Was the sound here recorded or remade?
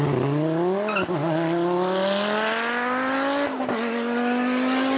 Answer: recorded